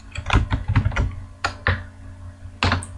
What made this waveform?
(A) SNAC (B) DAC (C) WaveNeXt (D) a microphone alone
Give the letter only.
D